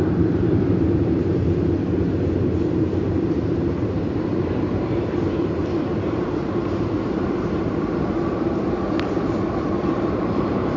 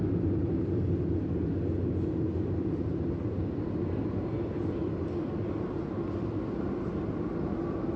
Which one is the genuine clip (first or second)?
second